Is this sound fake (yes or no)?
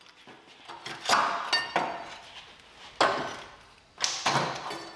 no